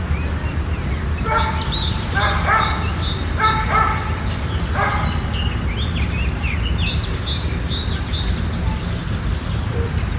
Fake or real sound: real